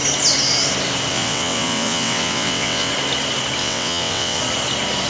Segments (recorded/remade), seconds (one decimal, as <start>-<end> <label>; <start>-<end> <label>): 0.0-1.1 recorded; 1.1-2.9 remade; 2.9-3.6 recorded; 3.6-4.4 remade; 4.4-5.1 recorded